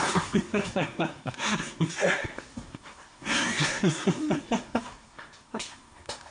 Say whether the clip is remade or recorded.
remade